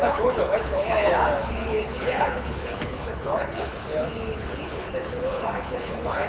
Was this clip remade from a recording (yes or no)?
yes